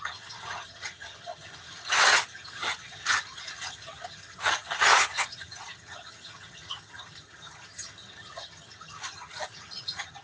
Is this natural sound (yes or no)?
no